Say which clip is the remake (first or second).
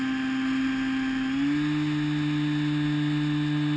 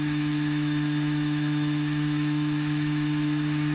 second